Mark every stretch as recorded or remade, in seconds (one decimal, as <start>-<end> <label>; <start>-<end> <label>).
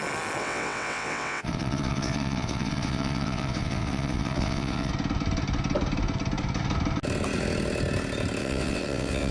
0.0-0.4 recorded; 0.4-4.9 remade; 4.9-8.4 recorded; 8.4-9.3 remade